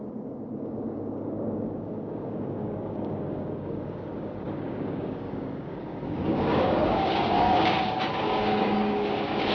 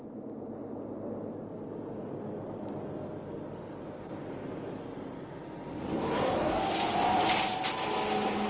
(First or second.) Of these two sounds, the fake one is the first